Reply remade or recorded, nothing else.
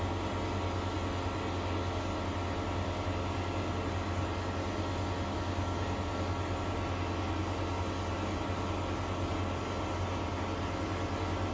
recorded